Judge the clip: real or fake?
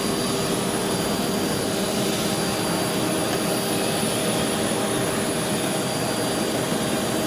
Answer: real